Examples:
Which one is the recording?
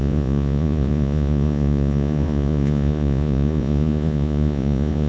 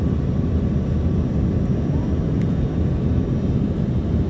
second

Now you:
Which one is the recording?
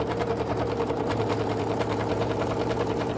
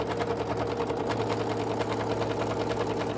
second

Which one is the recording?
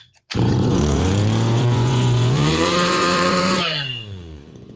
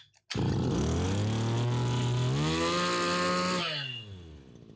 second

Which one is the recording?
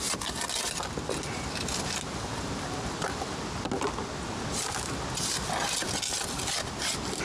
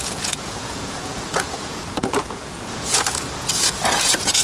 first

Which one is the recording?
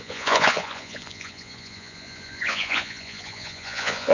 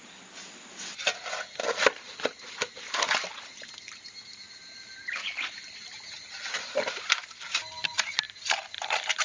second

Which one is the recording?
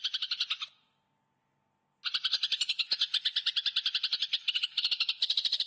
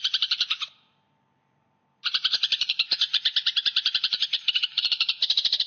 first